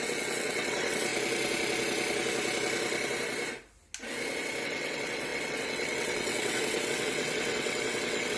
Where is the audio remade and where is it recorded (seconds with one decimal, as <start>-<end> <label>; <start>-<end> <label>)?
0.0-1.1 remade; 1.1-4.6 recorded; 4.6-8.4 remade